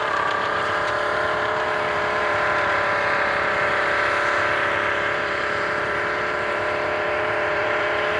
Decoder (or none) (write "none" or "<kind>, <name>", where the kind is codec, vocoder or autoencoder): vocoder, BigVGAN v2